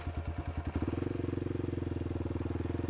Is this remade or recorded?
recorded